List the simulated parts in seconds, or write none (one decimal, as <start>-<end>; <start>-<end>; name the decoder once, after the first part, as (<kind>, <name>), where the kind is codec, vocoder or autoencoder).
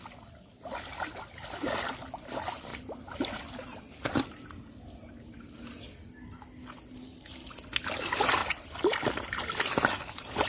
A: 2.7-3.8 (vocoder, BigVGAN v2)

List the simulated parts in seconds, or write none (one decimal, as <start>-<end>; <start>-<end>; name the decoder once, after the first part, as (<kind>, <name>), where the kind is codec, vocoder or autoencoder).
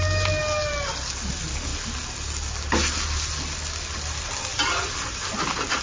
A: none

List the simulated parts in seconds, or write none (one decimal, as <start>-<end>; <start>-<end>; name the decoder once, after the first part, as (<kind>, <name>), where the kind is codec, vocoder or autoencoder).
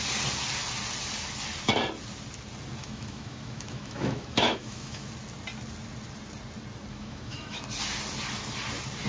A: 2.8-5.1 (autoencoder, DAC-VAE); 6.9-7.6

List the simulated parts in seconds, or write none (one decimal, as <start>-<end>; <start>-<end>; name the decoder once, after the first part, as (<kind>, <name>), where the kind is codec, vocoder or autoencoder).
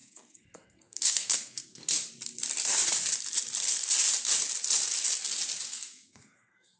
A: 0.0-1.8 (codec, SNAC); 5.7-6.8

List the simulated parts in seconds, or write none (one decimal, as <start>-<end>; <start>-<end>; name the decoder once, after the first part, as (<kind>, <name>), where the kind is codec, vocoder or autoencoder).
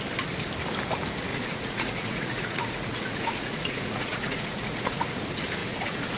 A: 1.3-5.0 (vocoder, Vocos); 5.6-6.2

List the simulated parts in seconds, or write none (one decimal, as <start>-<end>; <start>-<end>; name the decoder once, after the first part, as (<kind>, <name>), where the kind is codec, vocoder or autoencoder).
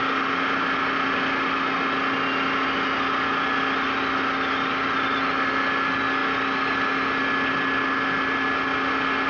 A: none